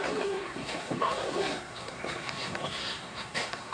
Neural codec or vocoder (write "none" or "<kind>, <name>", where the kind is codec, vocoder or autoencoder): codec, SNAC